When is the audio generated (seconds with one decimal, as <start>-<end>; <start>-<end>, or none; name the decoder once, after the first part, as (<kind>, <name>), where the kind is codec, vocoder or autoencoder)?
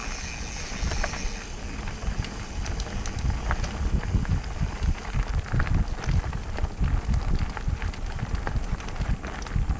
none